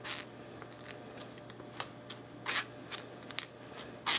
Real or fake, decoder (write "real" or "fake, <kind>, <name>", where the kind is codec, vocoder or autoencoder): real